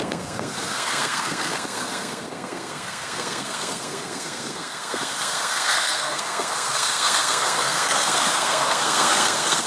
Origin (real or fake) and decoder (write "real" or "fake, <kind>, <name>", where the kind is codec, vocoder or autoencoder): fake, codec, SNAC